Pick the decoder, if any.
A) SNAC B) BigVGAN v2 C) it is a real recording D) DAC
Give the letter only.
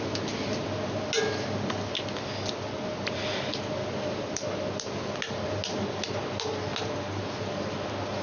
C